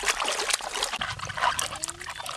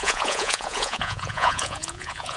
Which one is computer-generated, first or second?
second